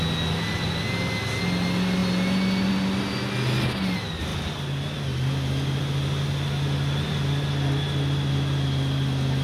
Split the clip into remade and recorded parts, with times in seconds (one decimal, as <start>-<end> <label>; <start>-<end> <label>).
0.0-9.4 recorded